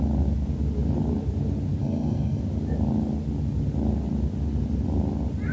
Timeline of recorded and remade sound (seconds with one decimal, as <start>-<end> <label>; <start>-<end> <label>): 0.0-1.8 recorded; 1.8-2.4 remade; 2.4-5.5 recorded